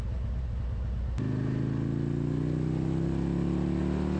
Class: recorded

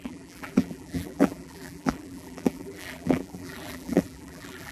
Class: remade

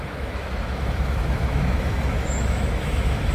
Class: remade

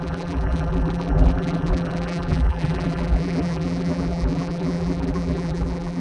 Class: remade